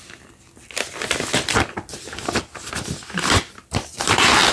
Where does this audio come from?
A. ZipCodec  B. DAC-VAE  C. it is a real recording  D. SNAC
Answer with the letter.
C